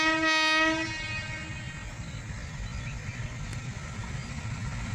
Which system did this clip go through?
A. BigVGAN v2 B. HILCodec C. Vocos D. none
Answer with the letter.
D